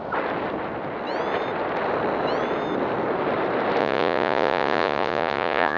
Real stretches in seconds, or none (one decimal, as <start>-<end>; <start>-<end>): 0.0-3.8